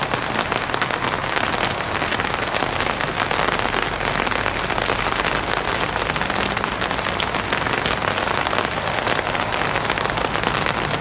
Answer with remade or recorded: recorded